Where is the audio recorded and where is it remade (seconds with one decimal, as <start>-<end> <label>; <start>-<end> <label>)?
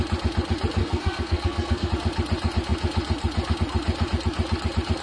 0.0-0.8 recorded; 0.8-1.9 remade; 1.9-5.0 recorded